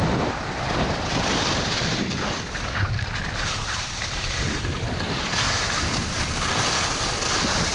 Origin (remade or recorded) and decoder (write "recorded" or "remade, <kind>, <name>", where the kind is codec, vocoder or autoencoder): remade, vocoder, BigVGAN v2